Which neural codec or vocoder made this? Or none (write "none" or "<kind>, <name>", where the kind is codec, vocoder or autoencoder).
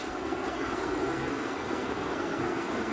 codec, SNAC